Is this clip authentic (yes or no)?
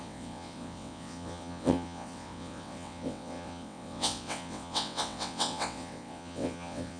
no